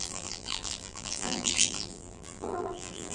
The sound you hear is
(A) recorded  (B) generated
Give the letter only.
B